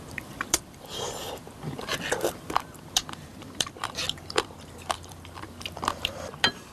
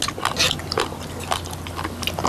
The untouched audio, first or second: second